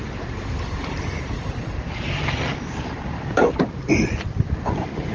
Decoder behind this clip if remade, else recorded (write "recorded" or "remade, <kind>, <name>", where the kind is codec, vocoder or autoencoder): remade, vocoder, BigVGAN v2